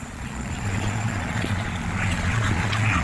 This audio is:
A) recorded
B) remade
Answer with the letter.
B